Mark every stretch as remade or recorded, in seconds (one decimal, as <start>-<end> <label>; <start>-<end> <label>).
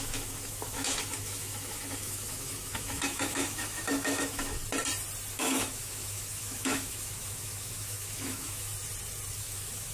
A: 0.0-4.6 remade; 4.6-5.3 recorded; 5.3-8.7 remade; 8.7-9.3 recorded; 9.3-9.9 remade